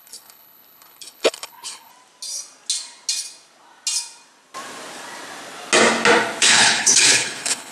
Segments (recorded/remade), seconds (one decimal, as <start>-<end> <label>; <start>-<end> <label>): 0.0-1.9 remade; 1.9-6.4 recorded; 6.4-7.7 remade